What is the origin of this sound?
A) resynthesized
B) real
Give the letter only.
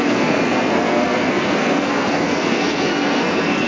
A